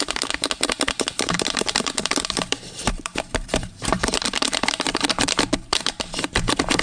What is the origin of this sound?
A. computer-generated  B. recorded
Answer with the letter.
A